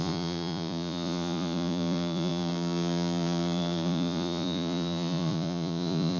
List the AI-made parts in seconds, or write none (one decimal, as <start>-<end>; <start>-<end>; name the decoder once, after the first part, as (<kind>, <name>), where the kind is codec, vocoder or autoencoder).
0.0-6.2 (vocoder, Vocos)